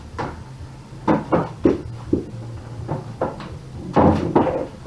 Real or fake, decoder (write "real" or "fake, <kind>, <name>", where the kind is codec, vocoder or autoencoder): real